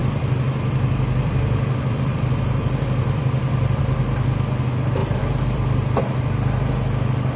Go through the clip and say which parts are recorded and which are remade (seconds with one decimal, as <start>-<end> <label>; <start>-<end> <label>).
0.0-3.8 remade; 3.8-5.0 recorded; 5.0-5.7 remade; 5.7-7.4 recorded